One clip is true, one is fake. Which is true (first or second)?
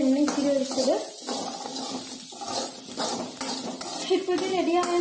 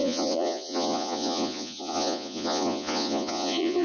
first